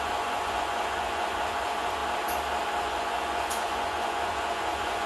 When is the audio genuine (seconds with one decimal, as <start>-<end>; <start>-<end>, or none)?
2.0-2.8